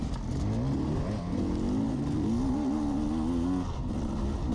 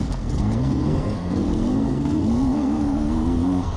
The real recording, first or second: first